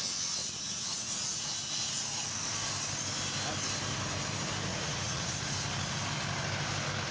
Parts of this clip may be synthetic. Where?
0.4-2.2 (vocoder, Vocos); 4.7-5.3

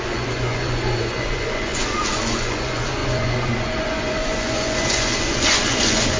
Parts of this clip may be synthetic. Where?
0.0-6.2 (vocoder, Vocos)

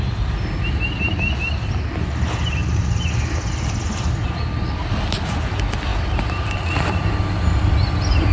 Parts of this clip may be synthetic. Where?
2.6-3.3 (vocoder, BigVGAN v2); 5.9-6.4

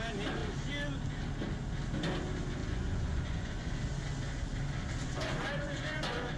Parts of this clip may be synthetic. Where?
2.6-3.8 (vocoder, Vocos); 5.0-6.4

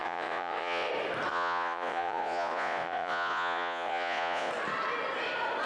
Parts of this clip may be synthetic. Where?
0.0-0.9 (vocoder, Vocos); 1.3-4.5

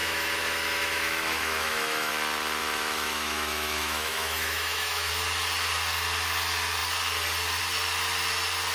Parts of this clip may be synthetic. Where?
0.0-2.1 (autoencoder, DAC-VAE); 2.6-5.1

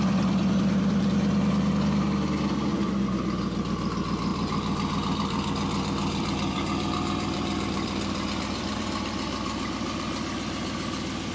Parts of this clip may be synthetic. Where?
4.3-8.8 (vocoder, BigVGAN v2)

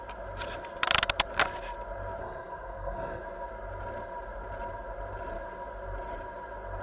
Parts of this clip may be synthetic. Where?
2.2-3.2 (codec, SNAC)